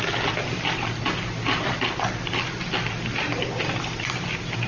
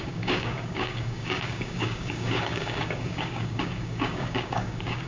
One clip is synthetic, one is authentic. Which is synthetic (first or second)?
second